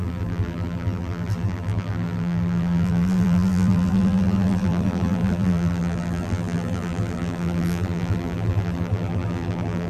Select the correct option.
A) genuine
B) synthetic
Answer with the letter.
B